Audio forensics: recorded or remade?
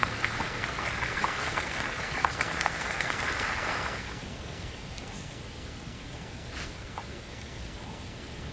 remade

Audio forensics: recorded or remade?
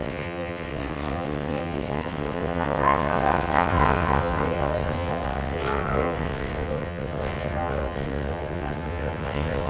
remade